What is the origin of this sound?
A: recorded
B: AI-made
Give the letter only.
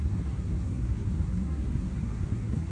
B